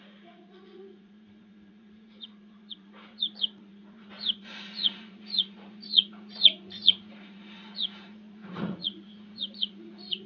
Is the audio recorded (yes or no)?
no